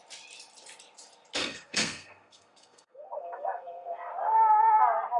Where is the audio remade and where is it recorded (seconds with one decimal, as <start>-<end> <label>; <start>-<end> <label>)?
0.0-1.4 recorded; 1.4-4.1 remade; 4.1-5.2 recorded